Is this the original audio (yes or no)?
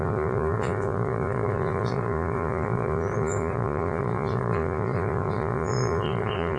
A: no